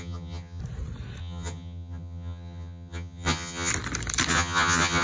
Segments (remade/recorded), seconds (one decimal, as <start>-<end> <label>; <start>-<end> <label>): 0.0-0.6 remade; 0.6-1.2 recorded; 1.2-3.7 remade; 3.7-4.3 recorded; 4.3-5.0 remade